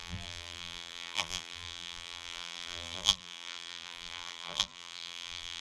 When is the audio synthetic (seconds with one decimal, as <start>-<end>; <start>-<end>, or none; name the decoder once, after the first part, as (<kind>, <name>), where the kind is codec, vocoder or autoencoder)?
0.0-5.6 (vocoder, BigVGAN v2)